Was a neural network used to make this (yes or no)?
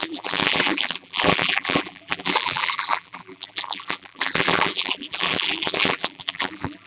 yes